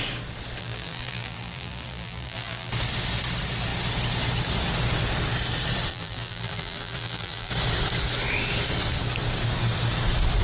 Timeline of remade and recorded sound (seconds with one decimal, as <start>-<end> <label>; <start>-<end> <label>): 0.0-0.6 recorded; 0.6-2.7 remade; 2.7-5.9 recorded; 5.9-7.5 remade; 7.5-10.4 recorded